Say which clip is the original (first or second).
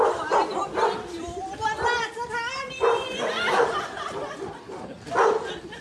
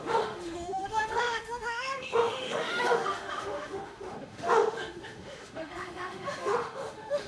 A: first